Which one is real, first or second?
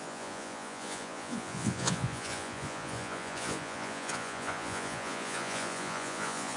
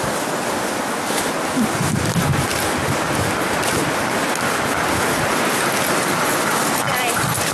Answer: second